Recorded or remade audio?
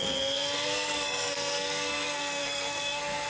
remade